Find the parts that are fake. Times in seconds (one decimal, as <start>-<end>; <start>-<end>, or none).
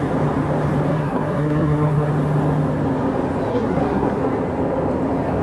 0.9-2.1; 3.5-4.2